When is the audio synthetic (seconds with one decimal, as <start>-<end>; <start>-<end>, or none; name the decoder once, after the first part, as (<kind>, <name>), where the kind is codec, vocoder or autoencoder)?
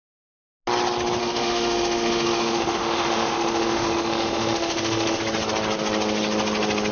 1.2-5.2 (autoencoder, DAC-VAE)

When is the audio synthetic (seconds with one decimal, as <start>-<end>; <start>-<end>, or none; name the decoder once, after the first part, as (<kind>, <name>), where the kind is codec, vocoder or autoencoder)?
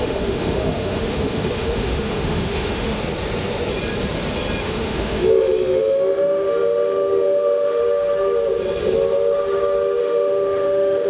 0.0-3.0 (autoencoder, DAC-VAE); 4.6-7.8; 10.0-11.1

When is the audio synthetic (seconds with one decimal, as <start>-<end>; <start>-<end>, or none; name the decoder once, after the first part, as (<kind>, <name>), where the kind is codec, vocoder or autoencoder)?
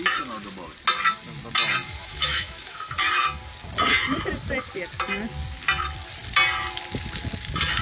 2.0-3.0 (autoencoder, DAC-VAE)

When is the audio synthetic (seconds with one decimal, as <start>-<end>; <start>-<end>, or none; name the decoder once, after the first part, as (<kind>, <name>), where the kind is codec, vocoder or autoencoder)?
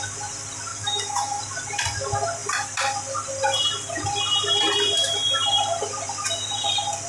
0.7-1.4 (autoencoder, DAC-VAE)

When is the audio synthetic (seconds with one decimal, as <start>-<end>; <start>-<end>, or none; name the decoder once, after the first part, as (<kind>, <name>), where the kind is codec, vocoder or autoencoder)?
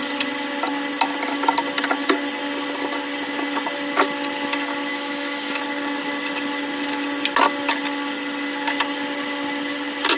4.9-5.6 (autoencoder, DAC-VAE)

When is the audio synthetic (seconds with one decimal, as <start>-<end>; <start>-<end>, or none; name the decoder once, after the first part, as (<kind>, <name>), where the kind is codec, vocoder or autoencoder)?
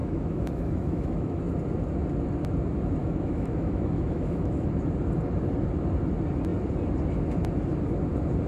0.0-1.4 (autoencoder, DAC-VAE); 3.0-4.7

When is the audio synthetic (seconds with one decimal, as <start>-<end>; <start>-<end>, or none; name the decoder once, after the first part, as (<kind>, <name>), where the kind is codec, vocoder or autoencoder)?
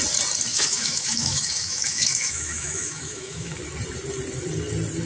0.5-3.6 (autoencoder, DAC-VAE)